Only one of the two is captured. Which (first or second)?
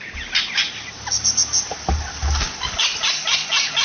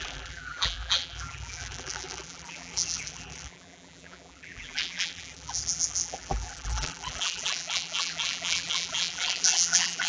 first